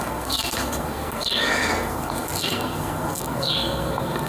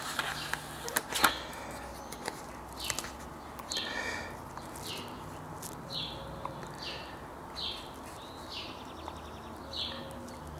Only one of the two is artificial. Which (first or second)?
first